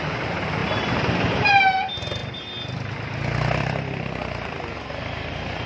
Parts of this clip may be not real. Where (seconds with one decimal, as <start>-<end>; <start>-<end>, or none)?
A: none